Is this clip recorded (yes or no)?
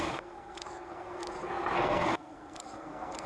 no